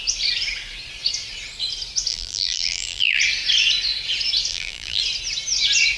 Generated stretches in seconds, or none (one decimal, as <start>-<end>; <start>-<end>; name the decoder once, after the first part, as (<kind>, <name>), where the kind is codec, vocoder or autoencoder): 2.1-3.2 (vocoder, BigVGAN v2); 4.5-5.0